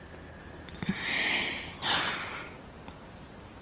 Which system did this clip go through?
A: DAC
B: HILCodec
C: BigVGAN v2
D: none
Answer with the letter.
D